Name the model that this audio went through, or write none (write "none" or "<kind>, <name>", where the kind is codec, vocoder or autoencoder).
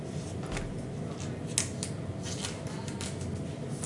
none